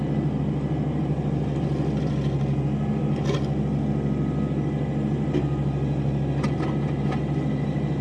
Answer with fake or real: real